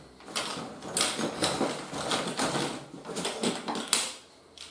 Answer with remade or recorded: recorded